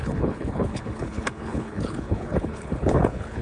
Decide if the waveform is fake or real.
fake